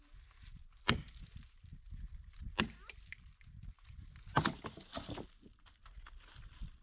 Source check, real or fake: real